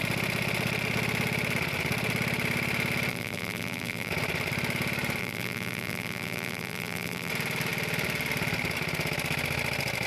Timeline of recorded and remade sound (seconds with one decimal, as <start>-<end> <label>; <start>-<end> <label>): 0.0-3.1 recorded; 3.1-4.1 remade; 4.1-5.2 recorded; 5.2-7.3 remade; 7.3-10.1 recorded